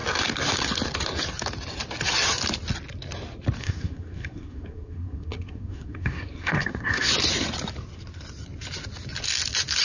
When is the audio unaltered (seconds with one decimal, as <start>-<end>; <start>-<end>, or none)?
0.0-3.6; 7.1-9.8